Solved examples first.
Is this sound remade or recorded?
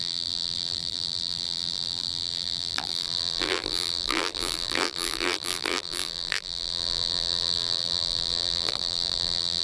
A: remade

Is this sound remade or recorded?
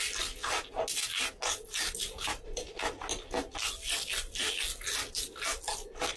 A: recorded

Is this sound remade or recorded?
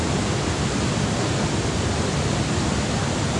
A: recorded